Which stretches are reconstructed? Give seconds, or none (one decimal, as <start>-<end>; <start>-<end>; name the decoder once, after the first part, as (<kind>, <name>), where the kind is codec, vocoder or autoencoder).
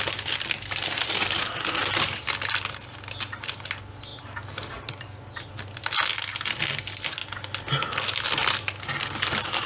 none